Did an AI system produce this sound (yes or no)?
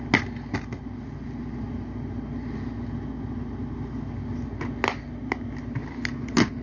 no